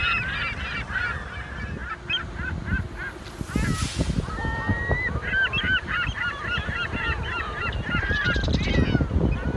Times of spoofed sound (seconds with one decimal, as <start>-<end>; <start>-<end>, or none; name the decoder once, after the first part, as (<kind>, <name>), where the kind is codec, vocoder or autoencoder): none